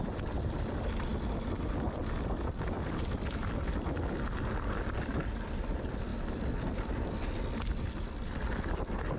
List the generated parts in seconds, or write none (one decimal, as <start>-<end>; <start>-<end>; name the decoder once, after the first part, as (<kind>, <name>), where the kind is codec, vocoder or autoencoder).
6.1-6.7 (vocoder, BigVGAN v2)